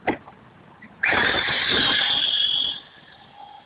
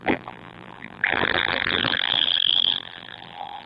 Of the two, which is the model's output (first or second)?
second